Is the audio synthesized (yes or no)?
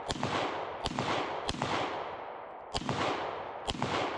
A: no